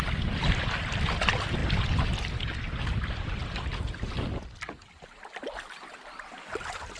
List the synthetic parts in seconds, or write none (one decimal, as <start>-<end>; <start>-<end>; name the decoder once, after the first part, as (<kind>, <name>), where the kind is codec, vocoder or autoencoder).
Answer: none